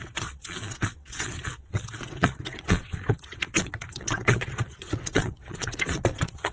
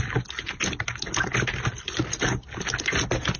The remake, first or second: first